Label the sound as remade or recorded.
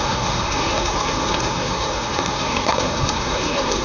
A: remade